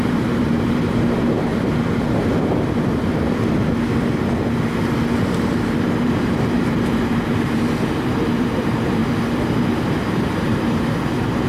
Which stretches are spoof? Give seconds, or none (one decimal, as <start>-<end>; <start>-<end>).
0.0-1.5; 5.2-9.0; 9.8-11.5